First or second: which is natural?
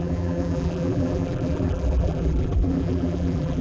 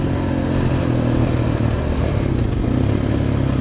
second